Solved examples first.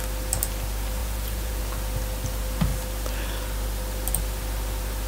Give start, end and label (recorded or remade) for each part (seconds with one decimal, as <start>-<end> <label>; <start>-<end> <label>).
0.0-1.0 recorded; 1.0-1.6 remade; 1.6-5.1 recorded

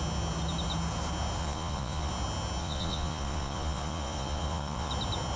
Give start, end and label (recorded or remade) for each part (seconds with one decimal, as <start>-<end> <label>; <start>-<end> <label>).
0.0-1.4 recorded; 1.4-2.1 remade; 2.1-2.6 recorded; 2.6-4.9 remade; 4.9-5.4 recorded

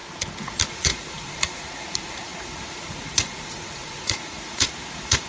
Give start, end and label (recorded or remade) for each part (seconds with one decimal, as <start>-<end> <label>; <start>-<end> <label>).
0.0-0.7 recorded; 0.7-5.3 remade

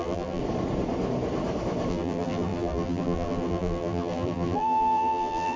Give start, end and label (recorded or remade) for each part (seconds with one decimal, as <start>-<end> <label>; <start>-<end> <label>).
0.0-0.4 remade; 0.4-1.9 recorded; 1.9-5.6 remade

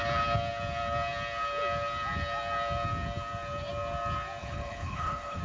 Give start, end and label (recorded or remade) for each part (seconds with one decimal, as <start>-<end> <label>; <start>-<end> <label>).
0.0-4.4 recorded; 4.4-5.4 remade